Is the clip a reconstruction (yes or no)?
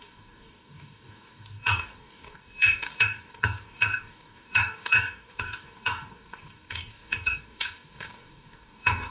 yes